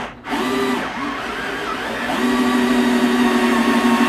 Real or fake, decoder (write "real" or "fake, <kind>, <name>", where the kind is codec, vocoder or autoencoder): real